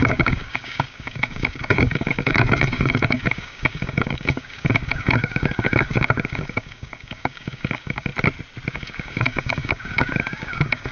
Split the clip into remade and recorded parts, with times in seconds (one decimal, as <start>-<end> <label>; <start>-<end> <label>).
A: 0.0-8.1 remade; 8.1-8.7 recorded; 8.7-10.9 remade